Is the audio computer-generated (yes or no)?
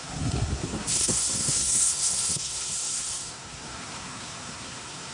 yes